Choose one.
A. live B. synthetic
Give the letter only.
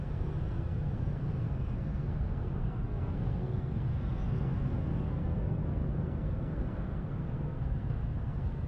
B